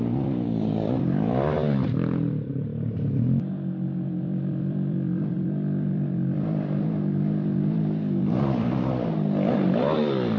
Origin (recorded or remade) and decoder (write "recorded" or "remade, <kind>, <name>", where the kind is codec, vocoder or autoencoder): remade, vocoder, BigVGAN v2